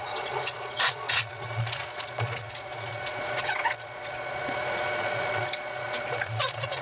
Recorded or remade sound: remade